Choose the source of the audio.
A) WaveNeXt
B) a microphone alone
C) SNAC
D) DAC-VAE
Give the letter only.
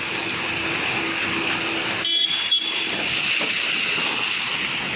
B